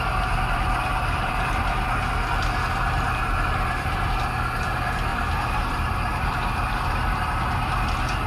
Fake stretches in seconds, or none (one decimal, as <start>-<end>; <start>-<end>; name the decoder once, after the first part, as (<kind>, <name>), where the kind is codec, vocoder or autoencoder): 0.9-1.6 (vocoder, BigVGAN v2); 5.1-7.4